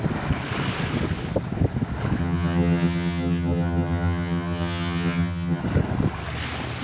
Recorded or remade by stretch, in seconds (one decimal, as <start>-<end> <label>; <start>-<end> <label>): 0.0-2.2 recorded; 2.2-5.6 remade; 5.6-6.8 recorded